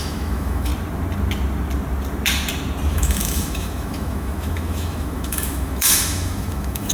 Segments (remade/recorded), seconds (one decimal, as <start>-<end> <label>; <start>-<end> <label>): 0.0-0.7 remade; 0.7-2.9 recorded; 2.9-6.9 remade